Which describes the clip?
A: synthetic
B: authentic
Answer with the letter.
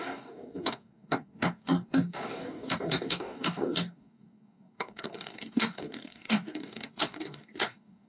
A